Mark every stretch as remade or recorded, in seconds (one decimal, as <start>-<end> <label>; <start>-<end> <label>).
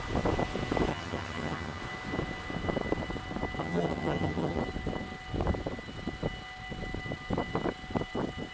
0.0-0.9 recorded; 0.9-1.8 remade; 1.8-3.6 recorded; 3.6-4.6 remade; 4.6-8.5 recorded